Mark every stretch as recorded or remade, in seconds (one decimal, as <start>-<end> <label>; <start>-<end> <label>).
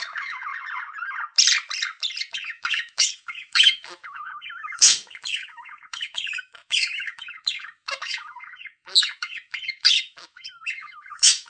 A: 0.0-0.5 remade; 0.5-2.3 recorded; 2.3-11.5 remade